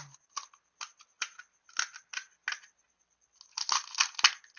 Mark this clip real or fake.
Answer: real